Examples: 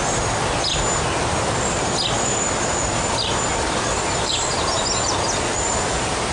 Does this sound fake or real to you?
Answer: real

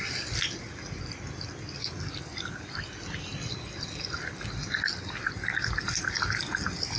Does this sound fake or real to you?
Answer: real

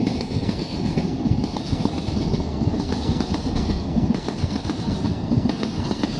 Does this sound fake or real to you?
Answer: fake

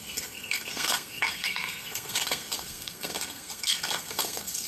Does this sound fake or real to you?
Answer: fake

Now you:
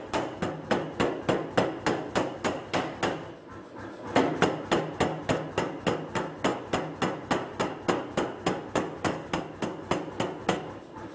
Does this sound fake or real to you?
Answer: real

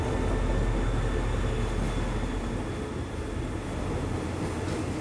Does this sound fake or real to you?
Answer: real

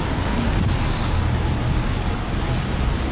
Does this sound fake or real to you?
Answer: real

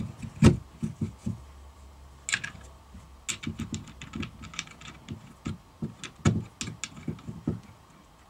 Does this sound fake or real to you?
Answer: real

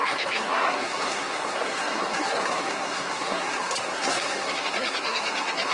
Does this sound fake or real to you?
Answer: fake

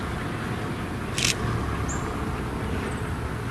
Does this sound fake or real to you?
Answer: real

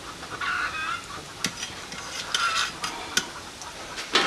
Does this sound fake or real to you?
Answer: real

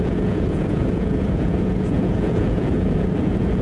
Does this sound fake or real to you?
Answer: fake